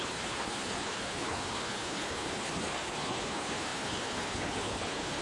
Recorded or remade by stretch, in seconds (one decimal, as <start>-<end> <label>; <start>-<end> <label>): 0.0-5.2 remade